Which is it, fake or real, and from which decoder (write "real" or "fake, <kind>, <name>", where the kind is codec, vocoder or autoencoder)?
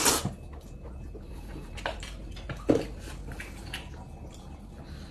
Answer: real